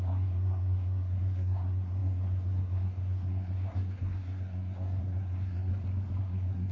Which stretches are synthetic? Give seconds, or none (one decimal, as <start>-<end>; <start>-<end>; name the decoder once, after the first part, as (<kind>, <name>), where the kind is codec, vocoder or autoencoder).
0.0-5.7 (codec, SNAC); 6.2-6.7